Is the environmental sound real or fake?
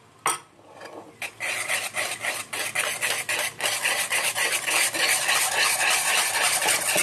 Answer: real